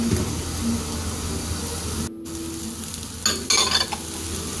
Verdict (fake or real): real